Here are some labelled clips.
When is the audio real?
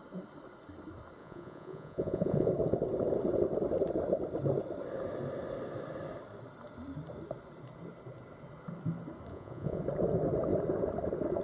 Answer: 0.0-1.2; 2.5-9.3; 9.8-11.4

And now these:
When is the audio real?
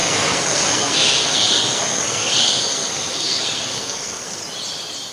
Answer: 4.4-5.1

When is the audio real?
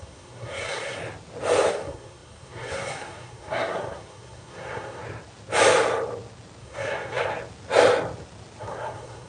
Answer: 1.0-1.7; 5.0-6.6; 7.3-8.6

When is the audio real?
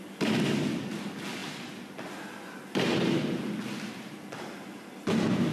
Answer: 0.0-5.5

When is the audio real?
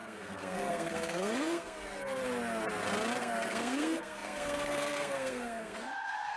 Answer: 2.2-3.2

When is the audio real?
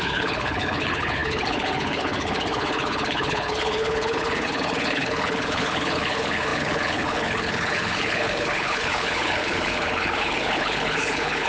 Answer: none